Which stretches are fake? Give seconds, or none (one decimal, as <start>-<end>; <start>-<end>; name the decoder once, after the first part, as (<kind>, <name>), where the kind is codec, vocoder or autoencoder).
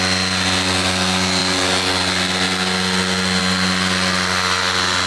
none